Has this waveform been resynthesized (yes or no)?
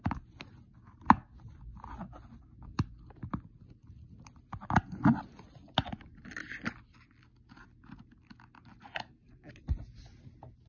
no